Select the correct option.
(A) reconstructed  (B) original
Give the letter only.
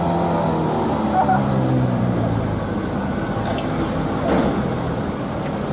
B